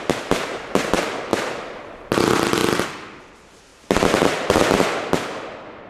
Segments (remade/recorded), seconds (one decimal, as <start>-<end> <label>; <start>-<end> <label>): 0.0-5.9 recorded